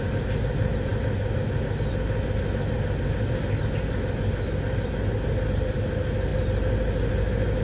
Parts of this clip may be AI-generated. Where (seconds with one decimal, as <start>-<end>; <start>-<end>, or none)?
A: none